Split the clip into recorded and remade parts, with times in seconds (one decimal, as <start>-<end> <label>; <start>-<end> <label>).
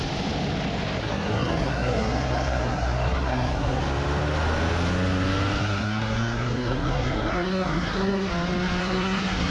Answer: 0.0-1.0 recorded; 1.0-3.8 remade; 3.8-5.6 recorded; 5.6-8.3 remade; 8.3-8.8 recorded; 8.8-9.5 remade